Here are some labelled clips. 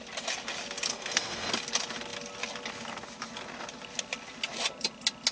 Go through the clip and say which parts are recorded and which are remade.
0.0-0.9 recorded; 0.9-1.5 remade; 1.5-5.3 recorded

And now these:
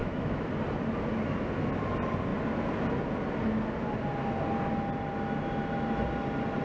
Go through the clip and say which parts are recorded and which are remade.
0.0-0.5 remade; 0.5-6.6 recorded

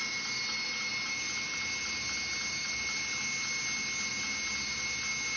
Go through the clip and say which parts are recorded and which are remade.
0.0-5.4 recorded

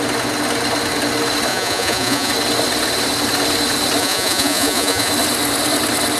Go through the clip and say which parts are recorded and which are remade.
0.0-1.5 recorded; 1.5-2.3 remade; 2.3-4.0 recorded; 4.0-5.1 remade; 5.1-6.2 recorded

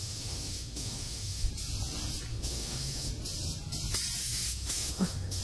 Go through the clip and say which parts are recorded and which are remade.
0.0-1.5 remade; 1.5-2.3 recorded; 2.3-3.1 remade; 3.1-4.2 recorded; 4.2-5.4 remade

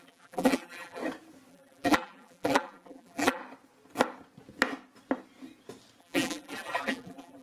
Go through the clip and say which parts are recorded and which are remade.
0.0-1.0 remade; 1.0-1.5 recorded; 1.5-3.4 remade; 3.4-6.0 recorded; 6.0-7.4 remade